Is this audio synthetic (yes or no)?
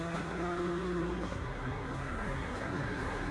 yes